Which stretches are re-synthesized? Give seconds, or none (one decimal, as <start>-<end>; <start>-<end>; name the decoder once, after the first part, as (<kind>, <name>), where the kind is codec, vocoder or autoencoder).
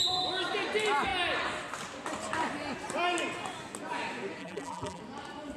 4.4-5.0 (vocoder, BigVGAN v2)